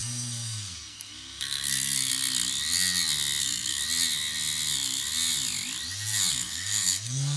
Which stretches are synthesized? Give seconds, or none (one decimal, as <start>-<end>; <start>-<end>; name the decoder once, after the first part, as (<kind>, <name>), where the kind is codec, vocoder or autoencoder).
0.0-2.1 (codec, SNAC); 3.4-3.8; 6.3-7.4